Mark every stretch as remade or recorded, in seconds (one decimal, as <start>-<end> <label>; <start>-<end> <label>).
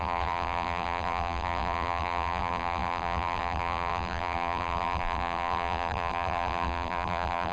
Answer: 0.0-7.5 remade